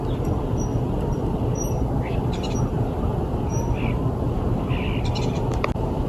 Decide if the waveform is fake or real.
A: real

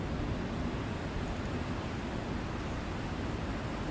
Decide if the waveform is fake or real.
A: real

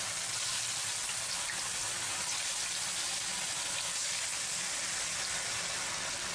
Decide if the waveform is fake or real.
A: real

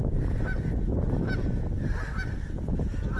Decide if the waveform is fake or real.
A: real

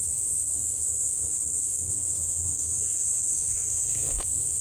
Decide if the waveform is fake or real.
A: fake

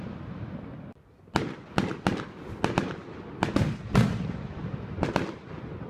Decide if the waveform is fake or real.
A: real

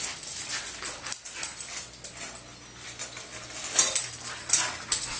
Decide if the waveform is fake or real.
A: real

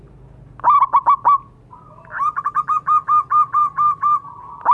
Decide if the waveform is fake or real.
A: real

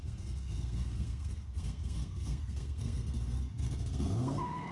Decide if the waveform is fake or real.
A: fake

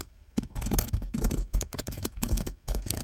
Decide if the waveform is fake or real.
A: fake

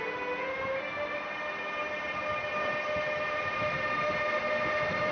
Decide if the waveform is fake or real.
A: real